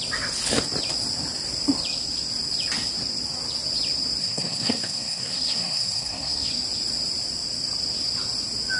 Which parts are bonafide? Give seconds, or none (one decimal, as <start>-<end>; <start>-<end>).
0.0-4.2; 6.5-8.8